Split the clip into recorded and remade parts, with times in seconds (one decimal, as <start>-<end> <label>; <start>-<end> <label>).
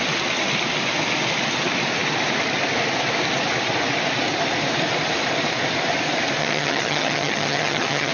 0.0-6.4 recorded; 6.4-8.1 remade